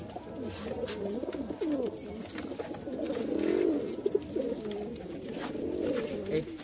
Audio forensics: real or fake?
real